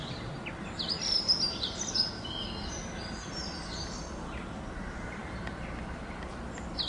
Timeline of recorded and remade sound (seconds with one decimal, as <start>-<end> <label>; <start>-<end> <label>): 0.0-6.9 recorded